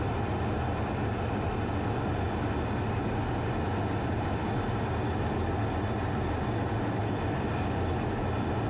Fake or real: real